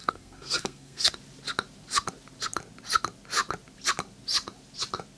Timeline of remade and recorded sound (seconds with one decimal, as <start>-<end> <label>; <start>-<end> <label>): 0.0-1.1 remade; 1.1-5.2 recorded